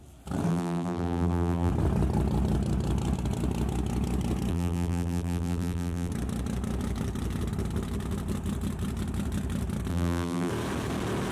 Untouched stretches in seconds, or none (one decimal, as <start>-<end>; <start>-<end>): 0.0-0.5; 1.7-4.5; 6.1-9.9; 10.5-11.3